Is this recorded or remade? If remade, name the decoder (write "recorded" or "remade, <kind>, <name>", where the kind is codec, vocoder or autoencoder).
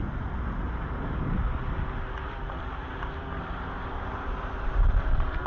recorded